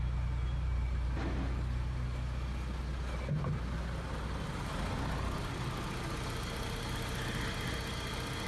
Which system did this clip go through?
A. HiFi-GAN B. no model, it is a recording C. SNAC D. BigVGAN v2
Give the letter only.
B